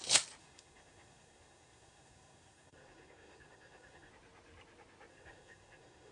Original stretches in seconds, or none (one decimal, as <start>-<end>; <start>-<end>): 0.0-0.4; 4.1-5.1